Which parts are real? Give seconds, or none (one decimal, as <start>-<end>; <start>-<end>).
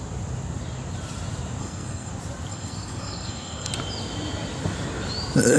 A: 0.0-1.6; 2.1-2.5; 3.7-5.6